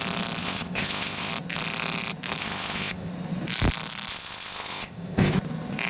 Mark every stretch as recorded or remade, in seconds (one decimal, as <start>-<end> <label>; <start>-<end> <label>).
0.0-0.4 recorded; 0.4-1.3 remade; 1.3-2.4 recorded; 2.4-3.1 remade; 3.1-4.1 recorded; 4.1-5.3 remade; 5.3-5.9 recorded